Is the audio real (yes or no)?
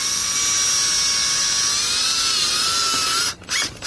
yes